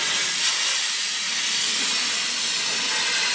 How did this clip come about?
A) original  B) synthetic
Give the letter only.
A